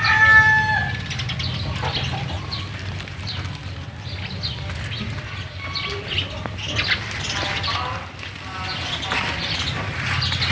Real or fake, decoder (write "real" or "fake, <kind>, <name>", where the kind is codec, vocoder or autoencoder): real